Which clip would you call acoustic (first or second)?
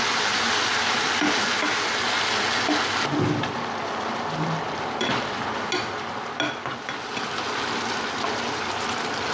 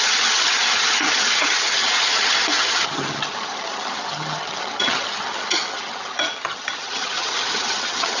first